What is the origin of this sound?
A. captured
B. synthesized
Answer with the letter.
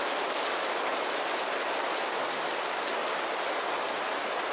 A